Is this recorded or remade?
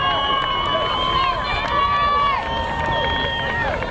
recorded